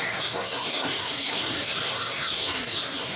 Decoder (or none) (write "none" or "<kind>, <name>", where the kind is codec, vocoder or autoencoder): codec, SNAC